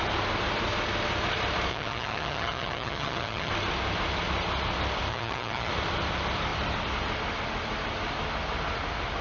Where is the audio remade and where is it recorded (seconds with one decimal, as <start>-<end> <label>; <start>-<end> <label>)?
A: 0.0-1.7 recorded; 1.7-3.5 remade; 3.5-5.1 recorded; 5.1-5.7 remade; 5.7-9.2 recorded